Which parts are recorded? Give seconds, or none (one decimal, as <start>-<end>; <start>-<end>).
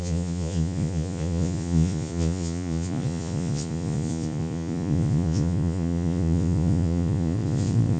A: none